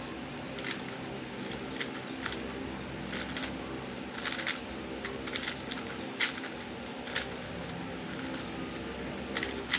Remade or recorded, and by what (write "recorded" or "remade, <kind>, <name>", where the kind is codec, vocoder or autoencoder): recorded